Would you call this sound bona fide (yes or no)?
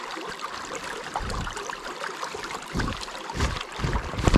no